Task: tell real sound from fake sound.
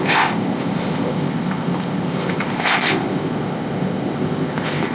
fake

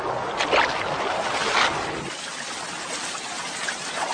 real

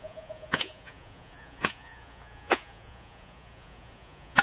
fake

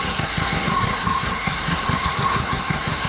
fake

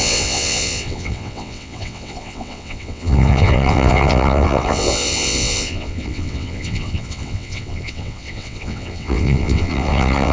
fake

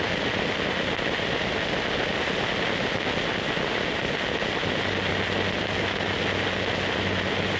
real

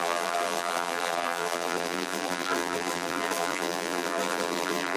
fake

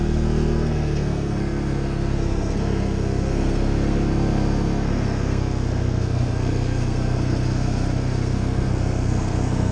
fake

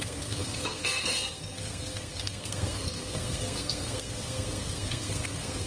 fake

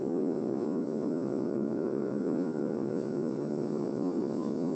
fake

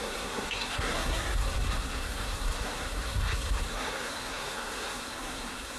fake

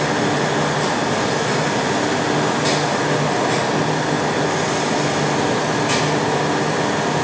real